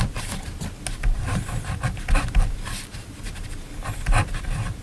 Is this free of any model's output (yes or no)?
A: no